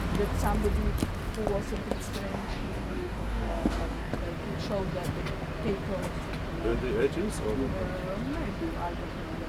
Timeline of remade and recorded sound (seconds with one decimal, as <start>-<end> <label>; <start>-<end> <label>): 0.0-2.3 recorded; 2.3-4.1 remade; 4.1-9.5 recorded